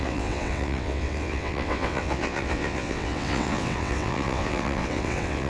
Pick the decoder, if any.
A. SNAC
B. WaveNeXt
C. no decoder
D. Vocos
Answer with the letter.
B